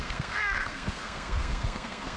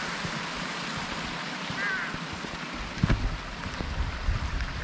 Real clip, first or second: second